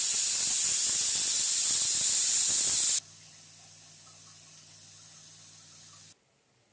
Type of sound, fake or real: real